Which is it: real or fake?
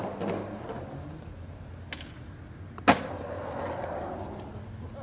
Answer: real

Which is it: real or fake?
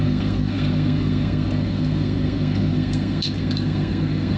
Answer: fake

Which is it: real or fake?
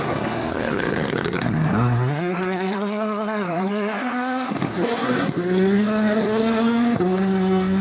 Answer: fake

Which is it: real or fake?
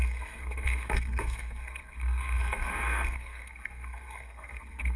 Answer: fake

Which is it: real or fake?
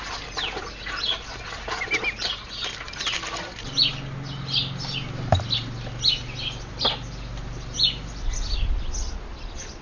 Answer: real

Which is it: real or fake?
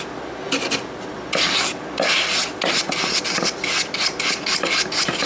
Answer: real